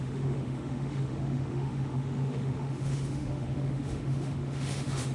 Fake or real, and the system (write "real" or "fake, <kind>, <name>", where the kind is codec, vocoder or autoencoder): fake, autoencoder, DAC-VAE